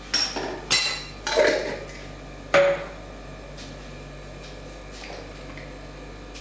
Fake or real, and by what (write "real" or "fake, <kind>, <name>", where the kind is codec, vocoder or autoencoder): real